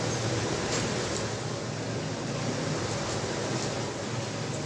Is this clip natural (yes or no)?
yes